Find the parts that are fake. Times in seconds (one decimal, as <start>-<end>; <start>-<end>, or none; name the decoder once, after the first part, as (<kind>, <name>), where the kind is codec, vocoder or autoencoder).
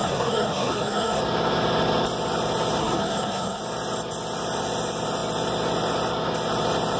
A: 0.0-1.2 (codec, SNAC); 2.8-3.6